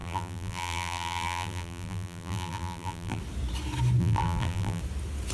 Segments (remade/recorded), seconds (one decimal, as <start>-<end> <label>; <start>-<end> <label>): 0.0-3.2 remade; 3.2-4.0 recorded; 4.0-4.8 remade; 4.8-5.3 recorded